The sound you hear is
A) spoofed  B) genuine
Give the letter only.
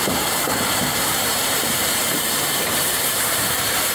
A